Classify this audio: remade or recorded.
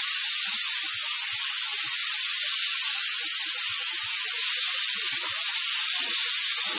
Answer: recorded